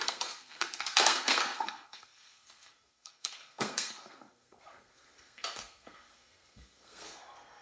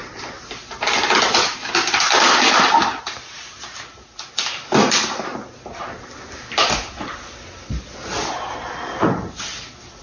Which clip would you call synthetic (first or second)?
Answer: first